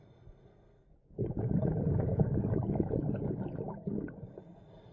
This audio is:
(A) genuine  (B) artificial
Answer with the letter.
A